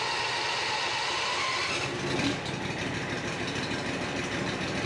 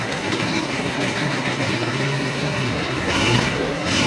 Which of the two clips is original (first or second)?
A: first